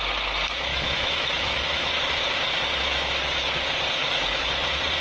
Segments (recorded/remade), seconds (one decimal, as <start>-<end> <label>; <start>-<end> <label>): 0.0-0.7 recorded; 0.7-1.9 remade; 1.9-2.9 recorded; 2.9-3.5 remade; 3.5-4.0 recorded; 4.0-4.6 remade; 4.6-5.0 recorded